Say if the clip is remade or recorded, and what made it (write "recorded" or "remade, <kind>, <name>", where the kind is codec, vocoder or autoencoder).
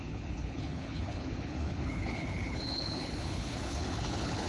remade, codec, HILCodec